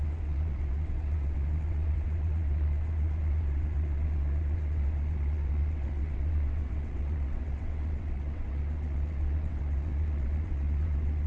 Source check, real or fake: fake